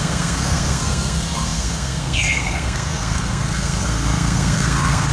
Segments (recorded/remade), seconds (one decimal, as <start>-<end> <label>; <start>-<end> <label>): 0.0-5.1 remade